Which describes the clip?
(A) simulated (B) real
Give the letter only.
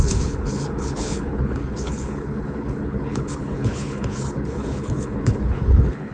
A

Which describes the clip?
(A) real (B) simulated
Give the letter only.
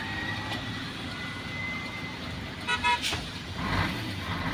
B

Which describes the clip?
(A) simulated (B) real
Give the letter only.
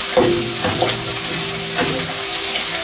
B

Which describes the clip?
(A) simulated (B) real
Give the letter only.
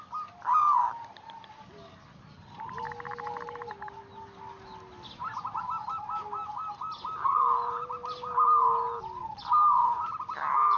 B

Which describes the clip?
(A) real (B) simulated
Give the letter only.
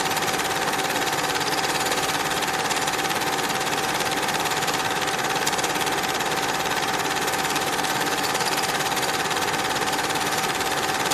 B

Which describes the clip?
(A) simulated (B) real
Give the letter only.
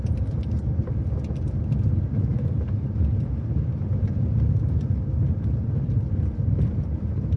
A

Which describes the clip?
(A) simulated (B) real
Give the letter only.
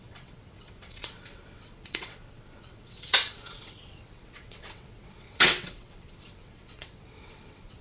A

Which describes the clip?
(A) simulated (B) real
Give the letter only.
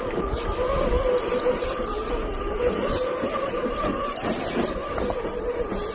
A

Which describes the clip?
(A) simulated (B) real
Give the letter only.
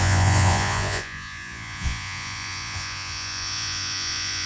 A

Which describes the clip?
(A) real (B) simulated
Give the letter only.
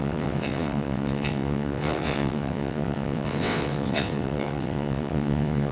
B